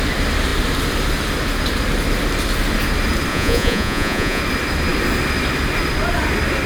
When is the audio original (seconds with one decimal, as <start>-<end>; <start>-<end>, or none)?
0.0-3.3; 4.4-6.7